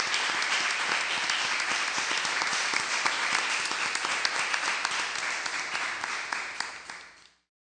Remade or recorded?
remade